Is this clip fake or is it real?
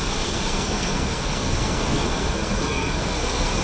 fake